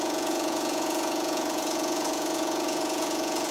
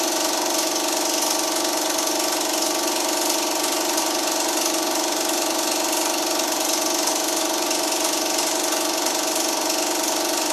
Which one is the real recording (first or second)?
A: second